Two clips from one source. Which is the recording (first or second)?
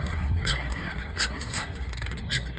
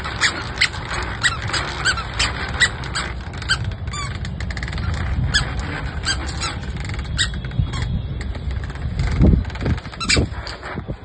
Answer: second